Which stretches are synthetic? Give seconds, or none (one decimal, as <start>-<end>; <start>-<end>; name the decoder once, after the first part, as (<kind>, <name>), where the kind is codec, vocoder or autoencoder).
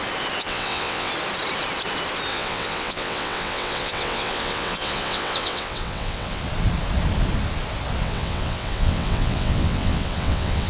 0.4-1.1 (vocoder, WaveNeXt); 2.3-6.4; 8.0-10.7